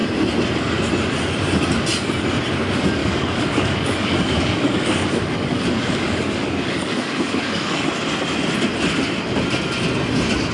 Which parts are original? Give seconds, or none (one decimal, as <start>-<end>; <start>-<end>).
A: 0.0-3.0; 7.9-10.5